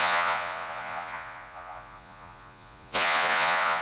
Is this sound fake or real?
fake